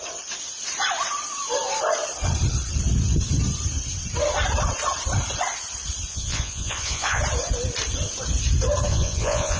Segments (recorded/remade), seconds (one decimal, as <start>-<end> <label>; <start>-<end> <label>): 0.0-6.1 recorded; 6.1-7.2 remade; 7.2-8.9 recorded; 8.9-9.6 remade